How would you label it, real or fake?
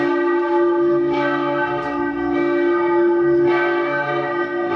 fake